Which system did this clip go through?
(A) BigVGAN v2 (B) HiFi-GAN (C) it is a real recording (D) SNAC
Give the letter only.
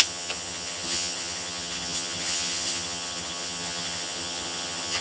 B